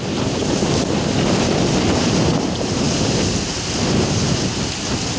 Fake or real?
real